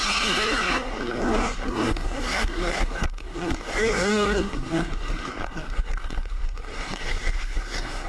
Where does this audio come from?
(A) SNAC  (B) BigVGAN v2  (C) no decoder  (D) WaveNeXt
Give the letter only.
A